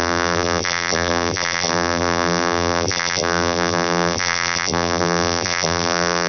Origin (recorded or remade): remade